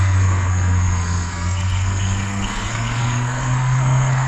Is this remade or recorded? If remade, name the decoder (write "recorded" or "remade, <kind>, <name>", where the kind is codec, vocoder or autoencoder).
remade, codec, SNAC